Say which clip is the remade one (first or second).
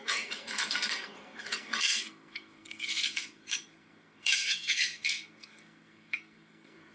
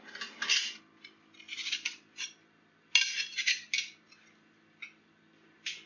first